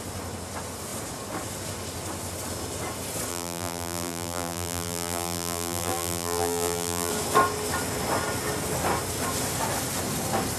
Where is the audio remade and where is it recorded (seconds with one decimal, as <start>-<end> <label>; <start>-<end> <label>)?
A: 0.0-3.3 recorded; 3.3-7.1 remade; 7.1-10.6 recorded